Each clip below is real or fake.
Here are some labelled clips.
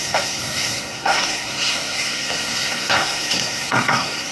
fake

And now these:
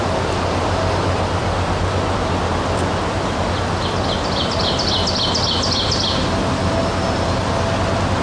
real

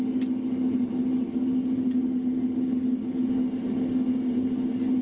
real